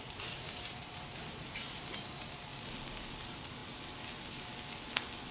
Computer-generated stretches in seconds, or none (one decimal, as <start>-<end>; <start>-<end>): 0.0-2.5; 3.1-3.6